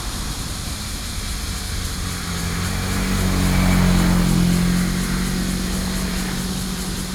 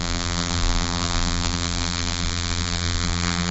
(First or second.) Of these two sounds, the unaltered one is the first